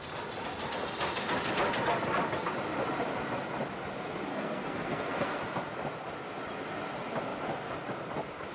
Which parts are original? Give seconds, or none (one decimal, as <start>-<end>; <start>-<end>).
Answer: 0.0-4.3; 5.4-8.5